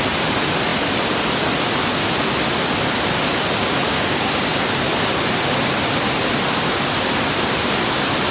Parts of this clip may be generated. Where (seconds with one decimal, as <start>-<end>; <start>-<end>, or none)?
3.9-4.6